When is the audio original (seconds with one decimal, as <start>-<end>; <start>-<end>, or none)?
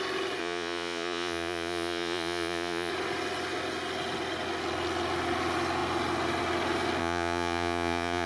0.0-0.4; 2.9-7.0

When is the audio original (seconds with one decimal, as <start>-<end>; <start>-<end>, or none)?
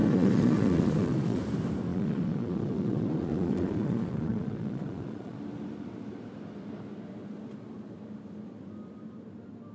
1.4-1.9; 5.4-9.7